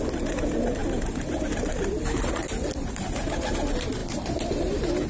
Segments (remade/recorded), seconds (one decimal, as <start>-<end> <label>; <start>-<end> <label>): 0.0-5.1 recorded